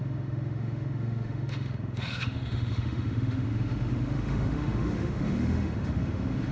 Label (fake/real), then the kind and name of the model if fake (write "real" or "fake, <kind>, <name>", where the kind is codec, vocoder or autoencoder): fake, autoencoder, DAC-VAE